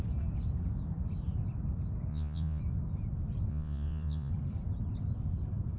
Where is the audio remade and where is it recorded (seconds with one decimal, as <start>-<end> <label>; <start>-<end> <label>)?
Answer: 0.0-2.1 recorded; 2.1-2.6 remade; 2.6-3.5 recorded; 3.5-4.3 remade; 4.3-5.8 recorded